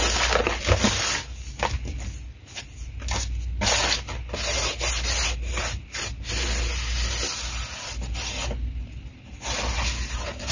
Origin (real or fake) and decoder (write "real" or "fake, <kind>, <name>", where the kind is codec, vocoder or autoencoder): real